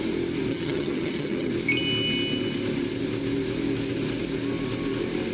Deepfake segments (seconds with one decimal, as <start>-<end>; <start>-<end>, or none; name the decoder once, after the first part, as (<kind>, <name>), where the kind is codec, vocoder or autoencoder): 0.5-1.5 (vocoder, HiFi-GAN)